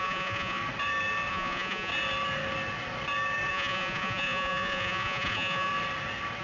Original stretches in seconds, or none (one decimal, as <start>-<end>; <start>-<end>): 0.6-1.3; 1.9-3.5; 5.7-6.4